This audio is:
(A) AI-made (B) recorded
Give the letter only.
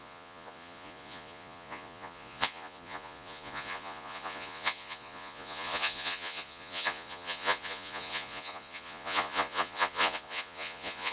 A